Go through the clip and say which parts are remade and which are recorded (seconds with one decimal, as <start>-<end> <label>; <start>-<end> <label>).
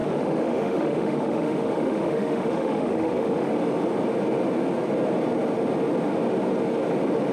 0.0-3.5 remade; 3.5-7.3 recorded